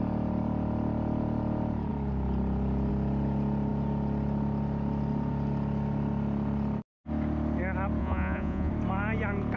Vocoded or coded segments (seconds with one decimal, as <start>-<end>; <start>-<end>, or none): 8.0-8.7